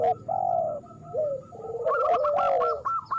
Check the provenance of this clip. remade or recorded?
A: recorded